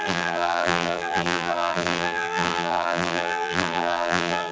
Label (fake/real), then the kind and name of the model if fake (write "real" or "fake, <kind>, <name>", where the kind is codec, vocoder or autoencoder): fake, vocoder, BigVGAN v2